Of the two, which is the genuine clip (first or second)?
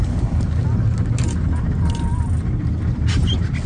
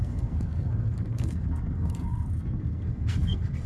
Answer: first